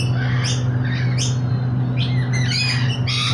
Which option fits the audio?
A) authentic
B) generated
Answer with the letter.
A